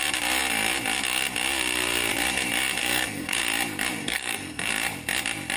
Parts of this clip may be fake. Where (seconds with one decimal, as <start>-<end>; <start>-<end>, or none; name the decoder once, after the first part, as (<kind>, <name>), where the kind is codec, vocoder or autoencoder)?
2.8-3.4 (codec, SNAC); 4.0-4.7